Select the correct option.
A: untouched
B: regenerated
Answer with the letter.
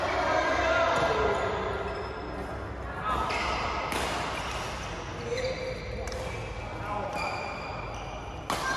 A